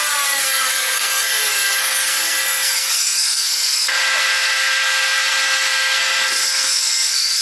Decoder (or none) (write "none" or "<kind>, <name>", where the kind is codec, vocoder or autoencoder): codec, SNAC